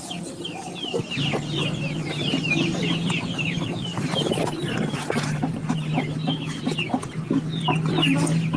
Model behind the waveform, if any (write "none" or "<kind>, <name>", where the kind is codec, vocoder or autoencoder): vocoder, BigVGAN v2